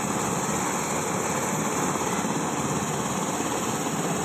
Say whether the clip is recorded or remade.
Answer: recorded